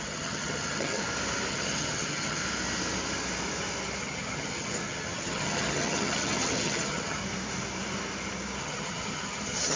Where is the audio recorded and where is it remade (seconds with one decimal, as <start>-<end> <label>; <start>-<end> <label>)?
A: 0.0-1.0 remade; 1.0-1.5 recorded; 1.5-2.4 remade; 2.4-4.0 recorded; 4.0-7.2 remade; 7.2-8.6 recorded; 8.6-9.8 remade